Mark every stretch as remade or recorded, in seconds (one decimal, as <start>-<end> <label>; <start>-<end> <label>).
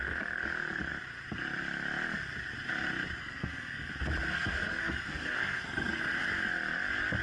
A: 0.0-3.2 recorded; 3.2-3.9 remade; 3.9-4.3 recorded; 4.3-6.0 remade; 6.0-7.2 recorded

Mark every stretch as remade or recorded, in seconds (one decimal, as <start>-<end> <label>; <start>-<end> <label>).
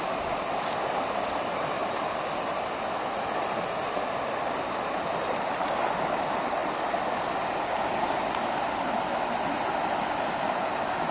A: 0.0-11.1 recorded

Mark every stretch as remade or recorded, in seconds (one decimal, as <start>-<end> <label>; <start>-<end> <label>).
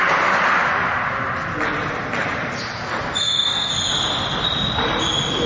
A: 0.0-3.2 recorded; 3.2-3.7 remade; 3.7-5.5 recorded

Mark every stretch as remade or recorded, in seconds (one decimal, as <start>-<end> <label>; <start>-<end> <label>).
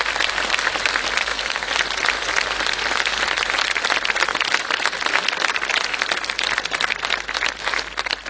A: 0.0-1.2 recorded; 1.2-1.7 remade; 1.7-8.3 recorded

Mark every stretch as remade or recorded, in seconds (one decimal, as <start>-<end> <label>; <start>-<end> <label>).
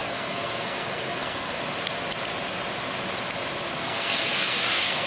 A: 0.0-1.6 remade; 1.6-3.8 recorded; 3.8-5.1 remade